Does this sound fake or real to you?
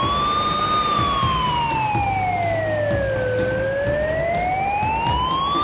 real